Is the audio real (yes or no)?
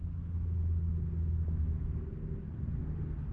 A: yes